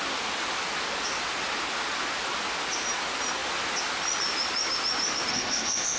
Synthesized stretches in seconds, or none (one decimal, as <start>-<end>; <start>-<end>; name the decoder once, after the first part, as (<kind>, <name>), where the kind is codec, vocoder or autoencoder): 5.3-6.0 (codec, ZipCodec)